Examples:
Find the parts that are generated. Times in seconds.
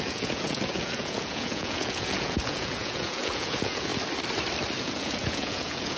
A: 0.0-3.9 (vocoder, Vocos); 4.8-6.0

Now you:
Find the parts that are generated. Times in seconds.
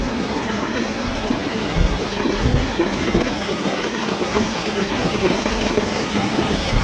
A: 0.0-6.8 (codec, SNAC)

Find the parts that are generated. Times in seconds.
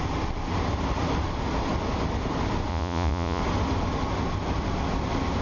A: 2.7-3.4 (vocoder, Vocos)